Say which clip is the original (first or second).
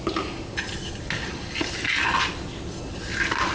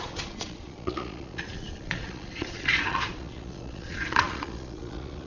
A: first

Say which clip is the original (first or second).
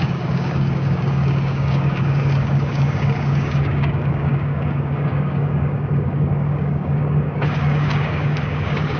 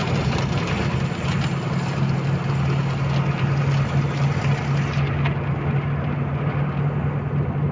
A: second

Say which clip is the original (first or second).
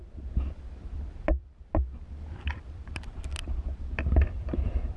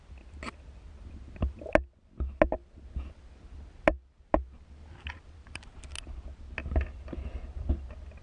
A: second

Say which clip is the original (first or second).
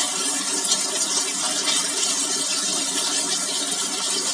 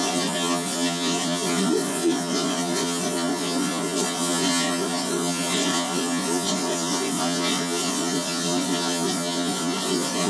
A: first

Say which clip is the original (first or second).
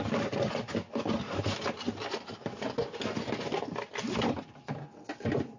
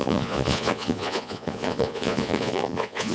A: first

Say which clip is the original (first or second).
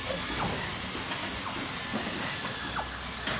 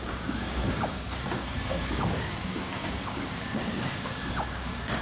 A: first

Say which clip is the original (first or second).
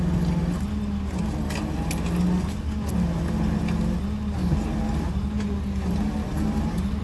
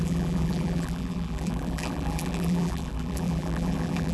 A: first